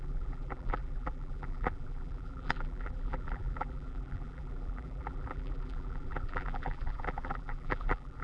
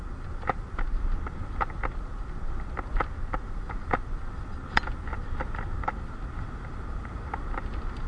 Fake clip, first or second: first